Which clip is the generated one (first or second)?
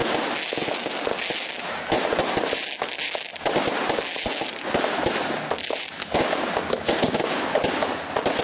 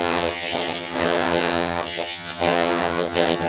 second